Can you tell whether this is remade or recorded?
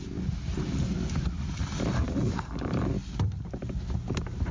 recorded